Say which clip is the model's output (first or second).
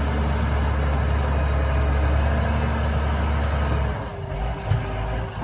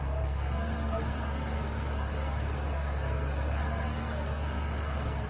second